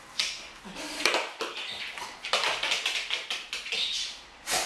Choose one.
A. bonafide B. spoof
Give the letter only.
A